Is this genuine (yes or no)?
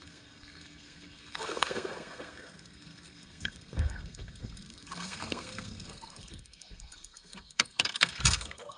no